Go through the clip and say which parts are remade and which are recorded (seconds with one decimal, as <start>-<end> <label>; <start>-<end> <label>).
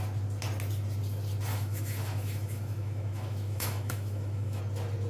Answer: 0.0-1.5 recorded; 1.5-4.6 remade; 4.6-5.1 recorded